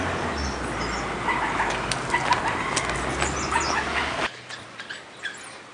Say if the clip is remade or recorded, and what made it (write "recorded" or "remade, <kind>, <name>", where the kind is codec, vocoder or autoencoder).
recorded